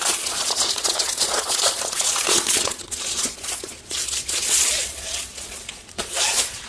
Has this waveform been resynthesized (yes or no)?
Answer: yes